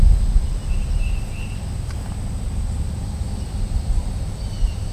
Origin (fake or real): real